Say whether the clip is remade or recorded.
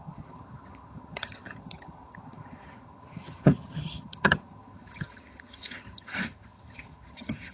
remade